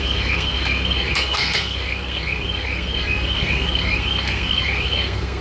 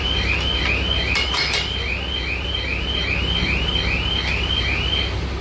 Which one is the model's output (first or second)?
first